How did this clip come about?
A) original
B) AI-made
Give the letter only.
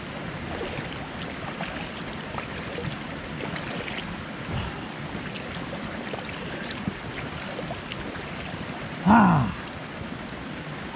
A